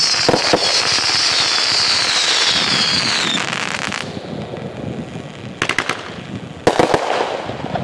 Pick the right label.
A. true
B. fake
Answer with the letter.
A